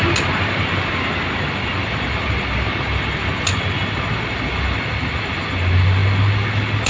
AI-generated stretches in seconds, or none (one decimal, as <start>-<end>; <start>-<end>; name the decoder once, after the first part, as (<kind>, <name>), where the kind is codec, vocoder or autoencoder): none